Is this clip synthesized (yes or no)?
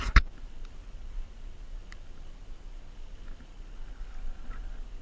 no